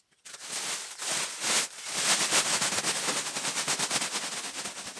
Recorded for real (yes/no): yes